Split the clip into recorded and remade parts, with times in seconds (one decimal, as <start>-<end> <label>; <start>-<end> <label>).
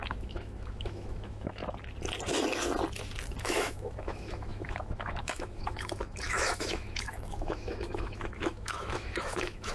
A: 0.0-1.6 remade; 1.6-3.4 recorded; 3.4-9.7 remade